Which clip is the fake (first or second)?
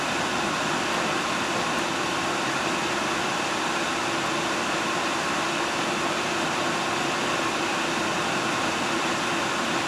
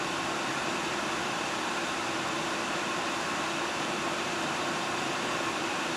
second